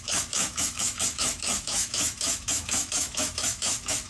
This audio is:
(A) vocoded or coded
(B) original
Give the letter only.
A